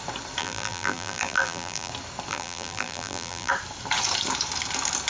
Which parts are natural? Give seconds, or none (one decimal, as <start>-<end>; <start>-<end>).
0.0-0.4; 1.9-2.3; 3.5-5.1